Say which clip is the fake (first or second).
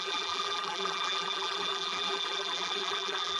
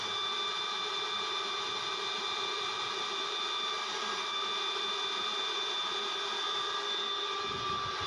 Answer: first